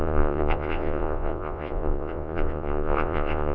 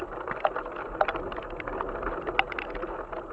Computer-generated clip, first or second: first